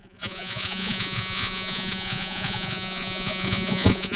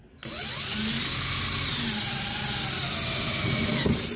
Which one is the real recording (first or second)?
second